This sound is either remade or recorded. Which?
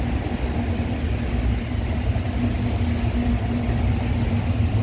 recorded